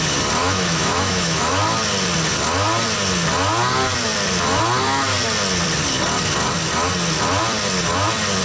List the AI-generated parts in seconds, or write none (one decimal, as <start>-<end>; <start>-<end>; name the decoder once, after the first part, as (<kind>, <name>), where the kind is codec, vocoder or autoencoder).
0.4-1.5 (autoencoder, DAC-VAE)